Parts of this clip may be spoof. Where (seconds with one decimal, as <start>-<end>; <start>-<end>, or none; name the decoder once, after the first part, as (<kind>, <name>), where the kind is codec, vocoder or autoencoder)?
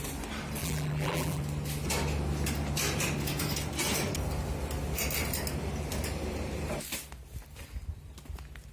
0.6-1.4 (vocoder, BigVGAN v2)